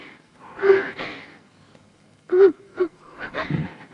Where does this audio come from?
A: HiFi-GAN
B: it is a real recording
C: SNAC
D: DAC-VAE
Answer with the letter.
C